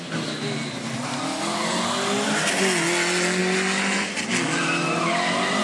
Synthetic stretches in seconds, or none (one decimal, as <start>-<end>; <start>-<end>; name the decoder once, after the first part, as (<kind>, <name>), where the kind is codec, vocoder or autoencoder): none